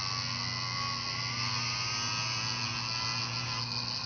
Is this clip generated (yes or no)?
no